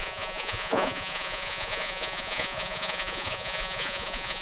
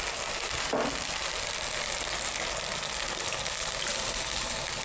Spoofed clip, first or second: first